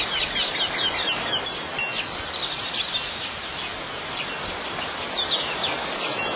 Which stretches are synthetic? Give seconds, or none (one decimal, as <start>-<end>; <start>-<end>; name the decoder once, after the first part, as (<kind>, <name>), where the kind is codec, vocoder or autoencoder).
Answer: none